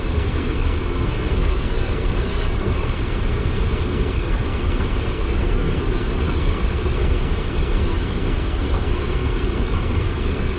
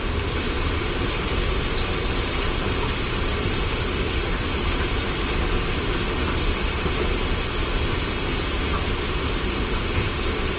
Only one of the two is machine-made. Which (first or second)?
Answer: first